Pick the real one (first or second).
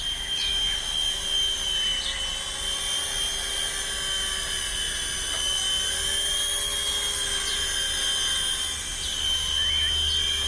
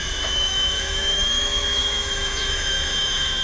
first